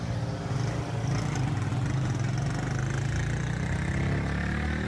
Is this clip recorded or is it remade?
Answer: recorded